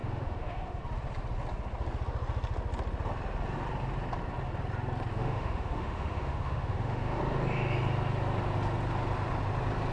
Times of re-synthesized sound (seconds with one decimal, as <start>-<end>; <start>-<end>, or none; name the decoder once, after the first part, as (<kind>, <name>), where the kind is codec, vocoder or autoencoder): 0.0-0.8 (autoencoder, DAC-VAE); 5.1-7.2